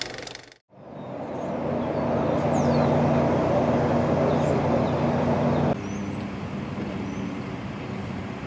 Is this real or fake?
real